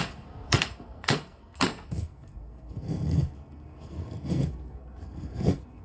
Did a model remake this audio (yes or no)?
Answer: yes